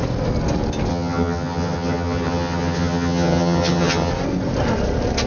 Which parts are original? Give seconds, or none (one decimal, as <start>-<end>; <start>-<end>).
0.0-0.9; 4.1-5.3